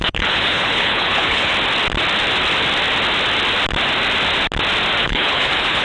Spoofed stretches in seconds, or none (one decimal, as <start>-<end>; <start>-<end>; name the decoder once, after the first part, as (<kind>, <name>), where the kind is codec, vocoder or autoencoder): 0.0-1.5 (codec, HILCodec); 5.0-5.8